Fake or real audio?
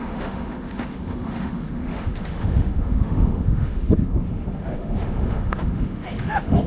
fake